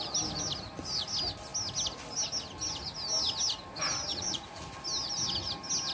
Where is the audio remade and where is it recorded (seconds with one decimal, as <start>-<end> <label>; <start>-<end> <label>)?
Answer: 0.0-4.1 recorded; 4.1-4.7 remade; 4.7-5.9 recorded